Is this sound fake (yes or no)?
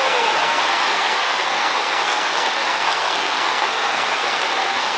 yes